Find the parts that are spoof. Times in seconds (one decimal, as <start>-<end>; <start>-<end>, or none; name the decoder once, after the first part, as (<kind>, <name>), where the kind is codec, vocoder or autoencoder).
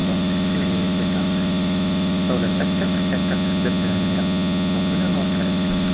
0.0-3.2 (autoencoder, DAC-VAE); 5.1-5.9